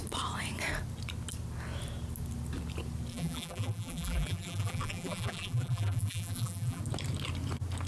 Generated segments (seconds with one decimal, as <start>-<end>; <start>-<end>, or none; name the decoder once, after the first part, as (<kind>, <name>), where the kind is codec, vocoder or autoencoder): 3.1-6.8 (vocoder, BigVGAN v2)